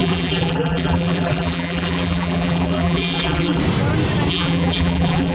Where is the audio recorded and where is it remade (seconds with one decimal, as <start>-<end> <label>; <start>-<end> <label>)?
0.0-3.6 remade; 3.6-4.3 recorded; 4.3-5.3 remade